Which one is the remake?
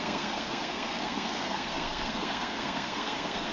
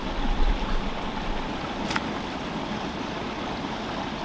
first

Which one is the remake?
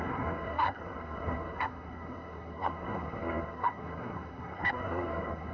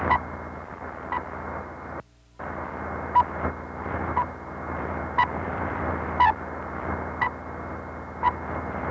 first